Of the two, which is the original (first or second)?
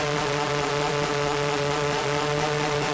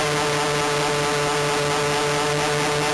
second